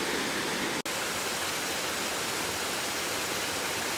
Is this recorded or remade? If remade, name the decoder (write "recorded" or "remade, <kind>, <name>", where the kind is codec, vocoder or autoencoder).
recorded